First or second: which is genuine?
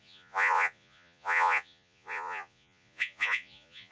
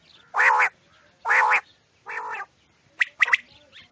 second